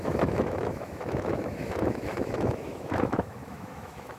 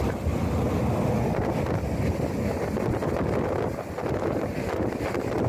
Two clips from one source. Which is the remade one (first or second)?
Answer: first